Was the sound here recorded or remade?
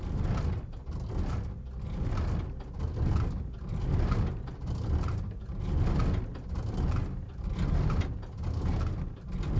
recorded